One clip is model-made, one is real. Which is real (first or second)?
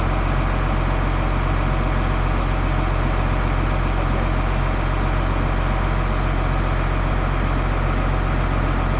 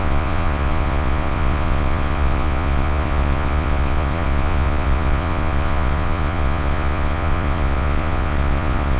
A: first